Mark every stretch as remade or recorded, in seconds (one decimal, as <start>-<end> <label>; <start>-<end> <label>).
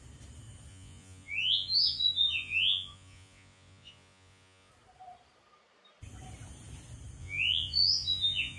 0.0-0.7 recorded; 0.7-4.7 remade; 4.7-7.2 recorded; 7.2-8.6 remade